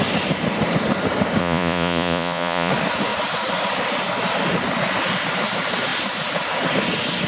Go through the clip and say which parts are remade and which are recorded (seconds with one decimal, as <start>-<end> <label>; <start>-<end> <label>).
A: 0.0-1.4 recorded; 1.4-2.7 remade; 2.7-7.3 recorded